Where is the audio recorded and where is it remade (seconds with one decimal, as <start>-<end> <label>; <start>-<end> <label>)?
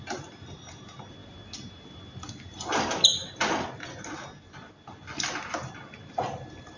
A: 0.0-6.8 recorded